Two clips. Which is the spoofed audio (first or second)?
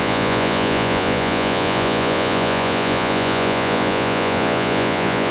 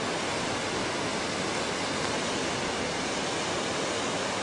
first